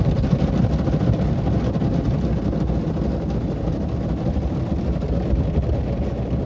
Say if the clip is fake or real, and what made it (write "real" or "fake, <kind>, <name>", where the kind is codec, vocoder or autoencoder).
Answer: real